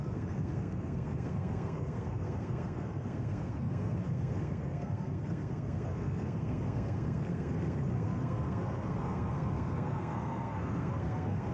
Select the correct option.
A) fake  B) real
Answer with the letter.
A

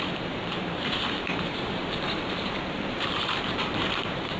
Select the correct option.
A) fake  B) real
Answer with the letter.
A